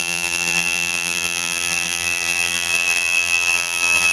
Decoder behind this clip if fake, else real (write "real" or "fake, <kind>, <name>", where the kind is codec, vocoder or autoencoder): fake, vocoder, BigVGAN v2